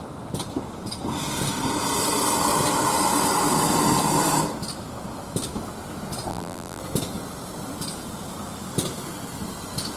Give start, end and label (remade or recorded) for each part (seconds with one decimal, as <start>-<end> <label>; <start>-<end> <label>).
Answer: 0.0-6.3 recorded; 6.3-6.8 remade; 6.8-10.0 recorded